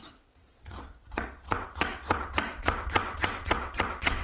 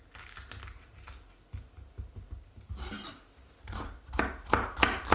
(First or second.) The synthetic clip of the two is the first